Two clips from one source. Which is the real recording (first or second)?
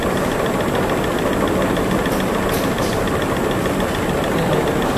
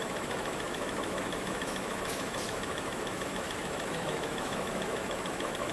first